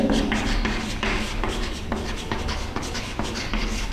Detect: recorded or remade remade